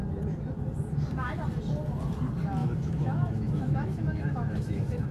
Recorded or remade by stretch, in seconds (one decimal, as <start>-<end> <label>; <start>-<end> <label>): 0.0-2.6 recorded; 2.6-5.1 remade